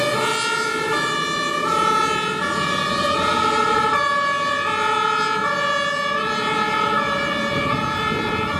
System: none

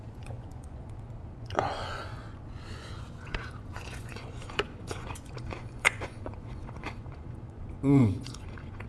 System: vocoder, Vocos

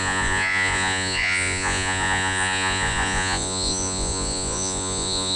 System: vocoder, Vocos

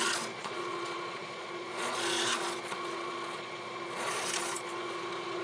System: vocoder, Vocos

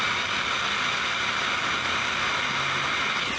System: none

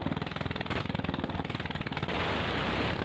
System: none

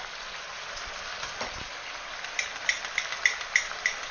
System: none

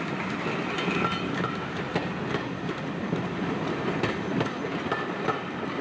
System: none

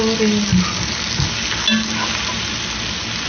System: none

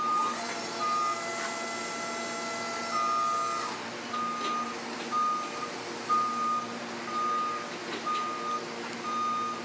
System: none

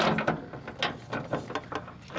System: none